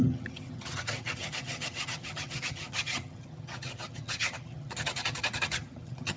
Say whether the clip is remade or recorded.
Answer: remade